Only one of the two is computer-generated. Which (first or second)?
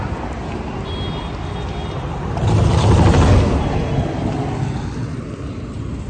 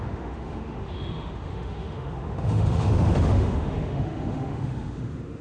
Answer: second